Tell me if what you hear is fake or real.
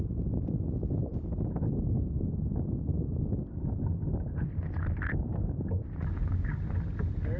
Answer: real